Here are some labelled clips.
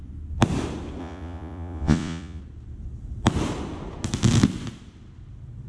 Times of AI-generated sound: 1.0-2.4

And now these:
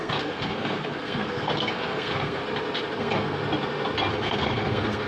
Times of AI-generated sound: 0.0-2.4; 3.0-3.4; 4.1-5.1